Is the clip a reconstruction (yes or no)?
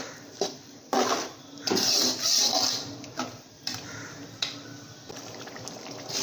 yes